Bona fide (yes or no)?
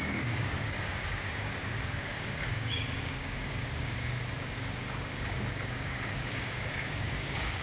no